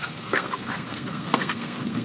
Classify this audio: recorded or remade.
remade